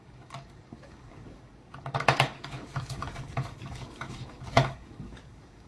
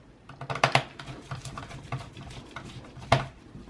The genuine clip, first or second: second